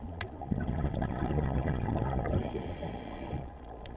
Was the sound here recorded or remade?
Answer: remade